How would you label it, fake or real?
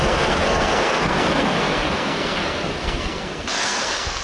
fake